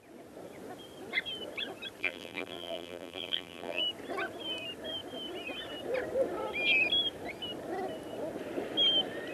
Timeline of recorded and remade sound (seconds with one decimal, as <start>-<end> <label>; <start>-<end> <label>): 0.0-2.0 recorded; 2.0-3.8 remade; 3.8-9.3 recorded